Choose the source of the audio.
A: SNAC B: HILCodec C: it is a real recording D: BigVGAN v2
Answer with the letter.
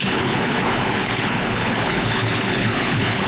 B